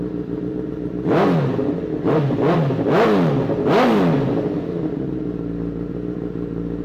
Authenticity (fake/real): real